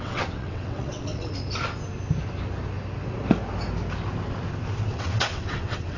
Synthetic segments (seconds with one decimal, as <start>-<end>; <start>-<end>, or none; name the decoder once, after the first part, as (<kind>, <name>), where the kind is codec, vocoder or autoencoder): 0.0-1.3 (vocoder, WaveNeXt); 4.9-6.0